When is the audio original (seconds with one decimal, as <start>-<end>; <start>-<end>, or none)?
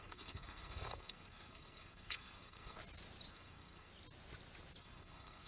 2.8-3.3; 3.9-4.8